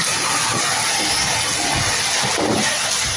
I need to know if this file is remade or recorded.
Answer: recorded